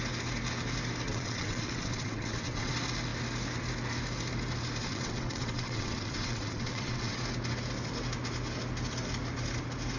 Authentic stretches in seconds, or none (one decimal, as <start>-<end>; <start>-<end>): 0.0-1.1; 2.7-4.8; 7.2-10.0